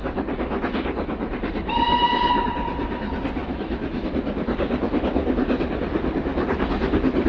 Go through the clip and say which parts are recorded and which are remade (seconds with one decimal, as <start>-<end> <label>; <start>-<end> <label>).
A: 0.0-3.4 recorded; 3.4-4.1 remade; 4.1-7.3 recorded